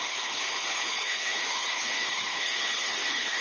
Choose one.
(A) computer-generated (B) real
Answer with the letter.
A